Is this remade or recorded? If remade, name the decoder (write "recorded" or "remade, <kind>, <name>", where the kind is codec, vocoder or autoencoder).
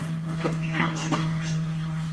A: remade, codec, SNAC